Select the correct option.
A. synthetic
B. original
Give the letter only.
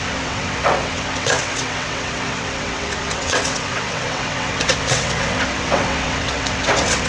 A